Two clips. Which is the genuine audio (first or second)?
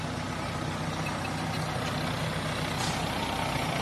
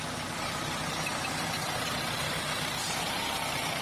first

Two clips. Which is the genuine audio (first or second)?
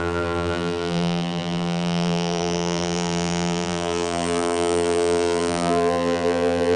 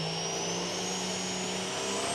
second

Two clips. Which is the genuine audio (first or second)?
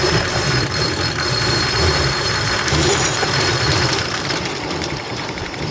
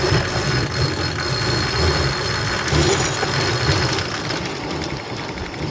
second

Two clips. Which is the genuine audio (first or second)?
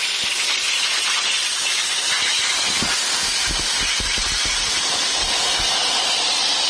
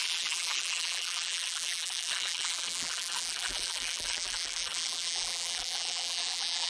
first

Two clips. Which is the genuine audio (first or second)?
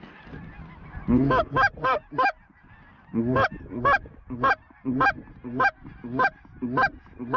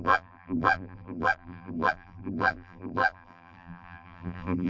first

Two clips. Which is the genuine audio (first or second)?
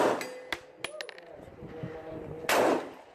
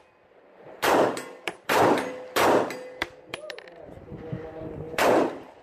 first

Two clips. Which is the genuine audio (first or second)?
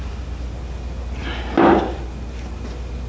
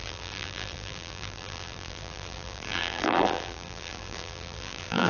first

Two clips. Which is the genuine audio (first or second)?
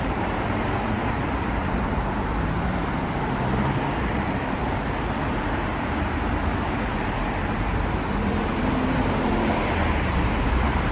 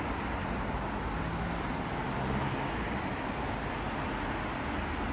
second